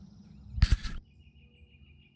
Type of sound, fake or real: real